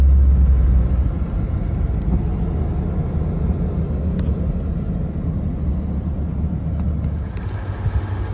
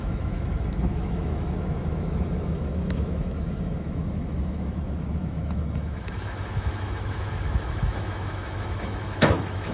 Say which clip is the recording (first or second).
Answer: first